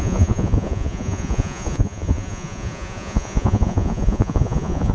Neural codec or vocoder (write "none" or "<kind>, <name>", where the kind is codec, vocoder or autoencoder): vocoder, Vocos